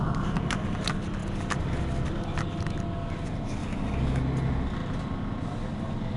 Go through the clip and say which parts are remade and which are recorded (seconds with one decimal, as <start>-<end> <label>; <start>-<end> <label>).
0.0-3.6 recorded; 3.6-4.2 remade; 4.2-6.2 recorded